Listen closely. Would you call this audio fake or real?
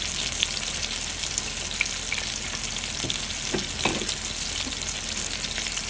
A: real